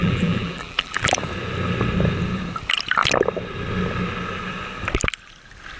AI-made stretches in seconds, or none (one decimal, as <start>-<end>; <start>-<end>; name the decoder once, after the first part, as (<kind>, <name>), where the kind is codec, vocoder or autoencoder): 0.0-1.2 (vocoder, BigVGAN v2)